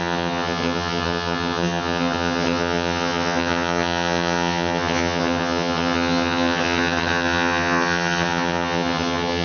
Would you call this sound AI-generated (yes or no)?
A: yes